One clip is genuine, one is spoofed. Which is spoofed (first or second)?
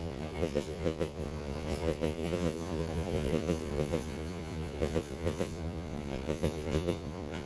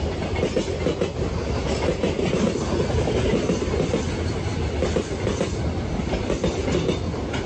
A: first